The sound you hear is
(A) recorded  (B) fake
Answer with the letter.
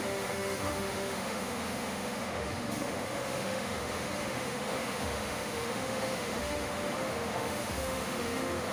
B